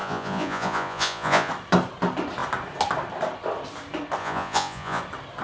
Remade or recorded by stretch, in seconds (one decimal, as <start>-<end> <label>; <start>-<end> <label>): 0.0-1.5 remade; 1.5-4.2 recorded; 4.2-5.0 remade; 5.0-5.4 recorded